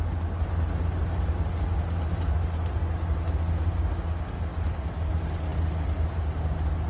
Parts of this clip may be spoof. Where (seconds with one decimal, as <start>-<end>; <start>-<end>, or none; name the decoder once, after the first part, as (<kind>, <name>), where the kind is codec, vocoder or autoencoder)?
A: none

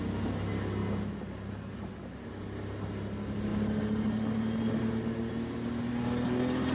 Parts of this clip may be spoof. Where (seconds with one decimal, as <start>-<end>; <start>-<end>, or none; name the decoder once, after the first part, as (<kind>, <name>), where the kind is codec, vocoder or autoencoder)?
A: none

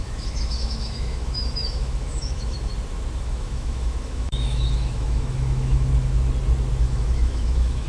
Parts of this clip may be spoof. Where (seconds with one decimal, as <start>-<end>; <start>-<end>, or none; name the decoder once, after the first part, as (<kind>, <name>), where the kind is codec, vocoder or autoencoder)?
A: 0.0-2.7 (autoencoder, DAC-VAE); 3.2-5.9; 6.8-7.9

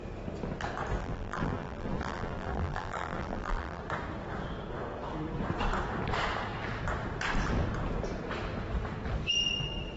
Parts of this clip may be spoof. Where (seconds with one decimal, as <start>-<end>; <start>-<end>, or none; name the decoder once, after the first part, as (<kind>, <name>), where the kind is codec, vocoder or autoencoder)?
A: 1.0-3.8 (vocoder, BigVGAN v2)

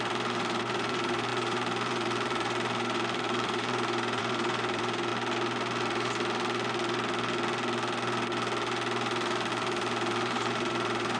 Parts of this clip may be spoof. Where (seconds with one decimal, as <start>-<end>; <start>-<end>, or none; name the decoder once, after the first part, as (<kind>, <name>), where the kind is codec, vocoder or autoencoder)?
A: 0.0-5.1 (vocoder, BigVGAN v2); 9.5-11.2

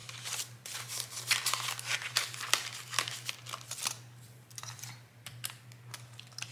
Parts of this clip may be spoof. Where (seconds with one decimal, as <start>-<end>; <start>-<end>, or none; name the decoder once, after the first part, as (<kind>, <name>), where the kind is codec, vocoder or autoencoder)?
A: 4.6-5.4 (vocoder, BigVGAN v2)

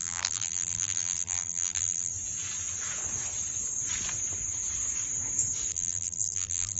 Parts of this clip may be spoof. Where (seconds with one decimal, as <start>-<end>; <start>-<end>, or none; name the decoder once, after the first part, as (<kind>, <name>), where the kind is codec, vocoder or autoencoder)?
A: 0.0-2.1 (vocoder, BigVGAN v2); 5.7-6.8

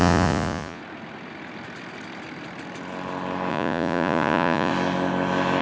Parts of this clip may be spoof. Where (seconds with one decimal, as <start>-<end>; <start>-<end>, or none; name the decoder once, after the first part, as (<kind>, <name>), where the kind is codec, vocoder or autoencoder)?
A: 0.0-0.8 (vocoder, Vocos); 3.5-4.7